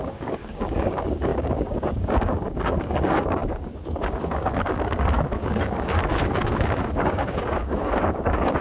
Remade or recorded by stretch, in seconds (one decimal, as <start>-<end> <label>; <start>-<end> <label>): 0.0-8.6 remade